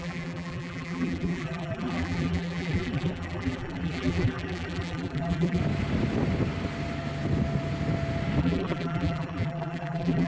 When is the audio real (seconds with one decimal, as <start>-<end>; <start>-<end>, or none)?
5.6-8.4